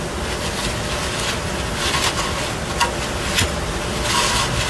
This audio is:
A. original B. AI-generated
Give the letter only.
A